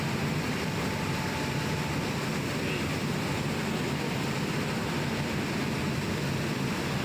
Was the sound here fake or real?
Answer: real